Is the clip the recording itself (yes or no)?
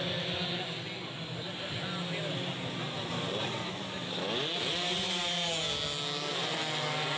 yes